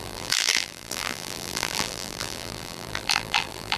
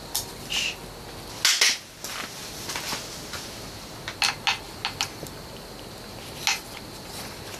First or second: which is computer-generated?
first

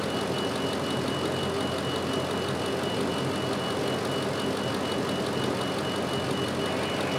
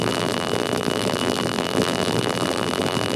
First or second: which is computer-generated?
second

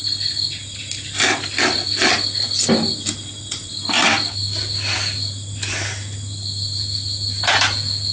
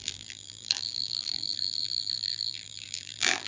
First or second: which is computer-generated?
second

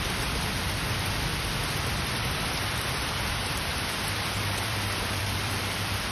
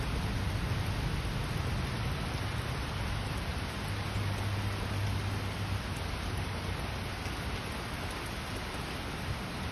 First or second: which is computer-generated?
first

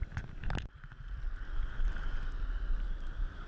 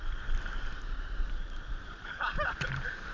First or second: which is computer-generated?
second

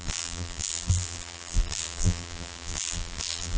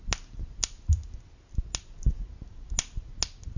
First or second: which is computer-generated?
first